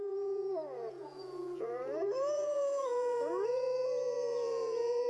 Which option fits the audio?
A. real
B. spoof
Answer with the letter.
B